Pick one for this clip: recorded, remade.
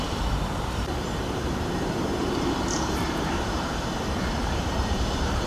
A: remade